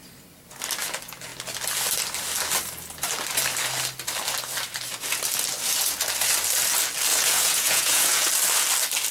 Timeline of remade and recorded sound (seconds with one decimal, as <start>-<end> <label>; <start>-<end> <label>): 0.0-7.1 recorded; 7.1-8.3 remade; 8.3-9.1 recorded